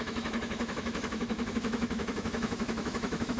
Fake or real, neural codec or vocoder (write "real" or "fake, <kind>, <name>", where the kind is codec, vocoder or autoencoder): fake, autoencoder, DAC-VAE